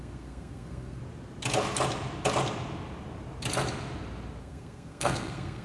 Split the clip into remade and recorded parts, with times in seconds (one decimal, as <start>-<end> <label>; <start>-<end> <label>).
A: 0.0-1.0 remade; 1.0-4.4 recorded; 4.4-5.6 remade